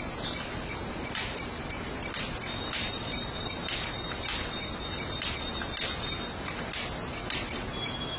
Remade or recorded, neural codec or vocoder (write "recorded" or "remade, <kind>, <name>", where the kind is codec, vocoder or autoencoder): recorded